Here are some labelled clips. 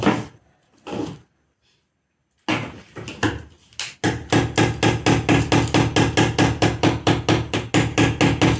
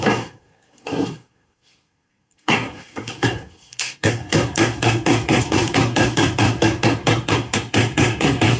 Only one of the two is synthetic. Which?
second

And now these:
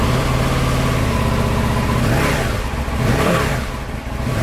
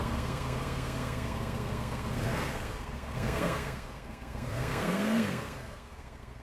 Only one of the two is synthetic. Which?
second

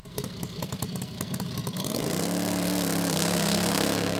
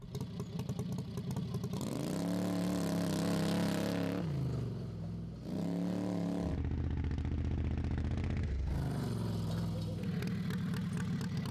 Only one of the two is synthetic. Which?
first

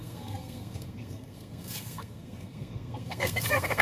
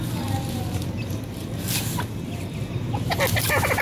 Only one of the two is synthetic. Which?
first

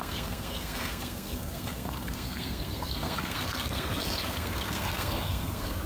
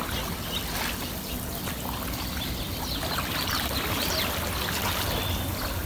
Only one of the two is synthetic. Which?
first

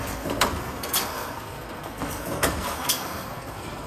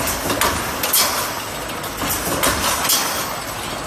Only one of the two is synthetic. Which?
first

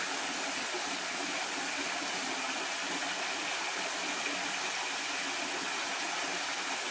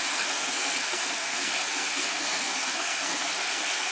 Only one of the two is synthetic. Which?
second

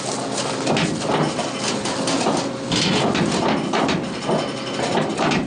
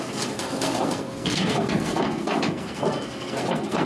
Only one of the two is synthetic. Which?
second